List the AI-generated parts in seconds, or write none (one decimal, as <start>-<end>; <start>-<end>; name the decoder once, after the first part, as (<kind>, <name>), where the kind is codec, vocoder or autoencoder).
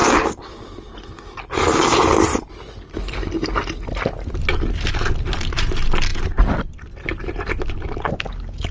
none